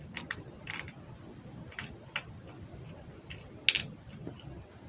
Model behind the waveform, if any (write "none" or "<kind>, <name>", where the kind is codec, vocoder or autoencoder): none